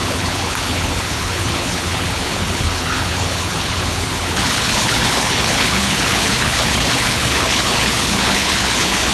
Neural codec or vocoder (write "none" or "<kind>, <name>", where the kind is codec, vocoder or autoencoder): codec, HILCodec